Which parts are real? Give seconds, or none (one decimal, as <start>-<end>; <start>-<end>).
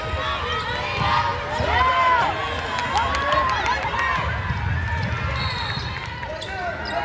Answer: 0.0-7.0